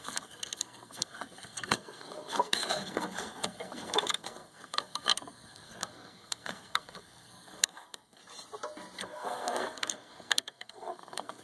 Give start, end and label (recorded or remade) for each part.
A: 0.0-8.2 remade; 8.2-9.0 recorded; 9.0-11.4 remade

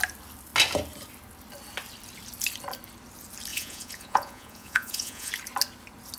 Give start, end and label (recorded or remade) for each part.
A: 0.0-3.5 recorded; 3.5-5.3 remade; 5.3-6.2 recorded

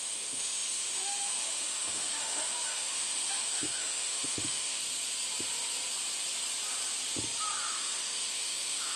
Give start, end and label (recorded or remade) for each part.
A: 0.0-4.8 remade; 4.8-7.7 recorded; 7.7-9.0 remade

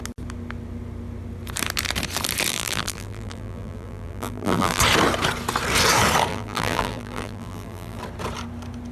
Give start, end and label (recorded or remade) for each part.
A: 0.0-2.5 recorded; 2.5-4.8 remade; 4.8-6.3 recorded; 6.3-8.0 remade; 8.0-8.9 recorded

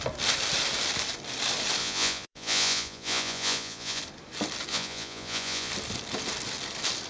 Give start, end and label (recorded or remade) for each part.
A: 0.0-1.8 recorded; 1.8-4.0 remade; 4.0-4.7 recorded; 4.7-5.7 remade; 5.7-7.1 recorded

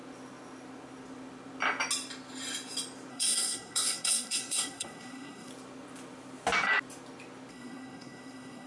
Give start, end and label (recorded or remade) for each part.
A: 0.0-3.1 recorded; 3.1-5.5 remade; 5.5-7.5 recorded; 7.5-8.7 remade

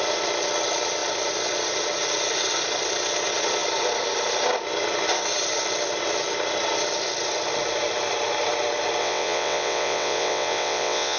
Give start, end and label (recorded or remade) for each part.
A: 0.0-9.0 recorded; 9.0-11.2 remade